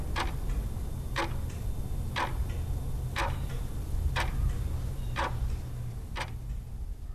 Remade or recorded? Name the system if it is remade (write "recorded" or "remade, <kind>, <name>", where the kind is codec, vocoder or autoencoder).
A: recorded